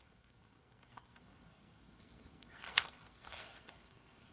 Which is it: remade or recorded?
remade